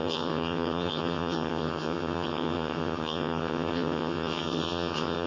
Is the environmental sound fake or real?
fake